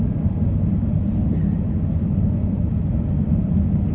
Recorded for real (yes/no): yes